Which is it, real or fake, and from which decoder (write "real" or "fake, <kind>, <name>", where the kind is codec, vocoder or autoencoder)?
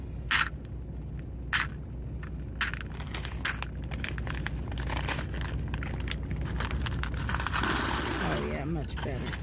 real